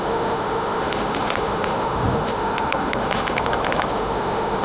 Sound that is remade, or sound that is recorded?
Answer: remade